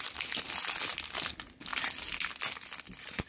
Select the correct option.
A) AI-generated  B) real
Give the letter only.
B